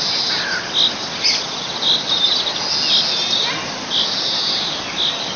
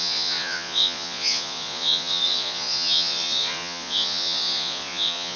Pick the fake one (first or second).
second